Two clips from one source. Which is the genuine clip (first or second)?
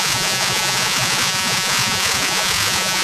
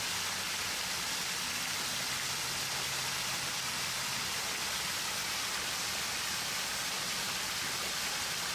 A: second